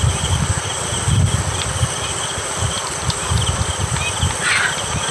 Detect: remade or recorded recorded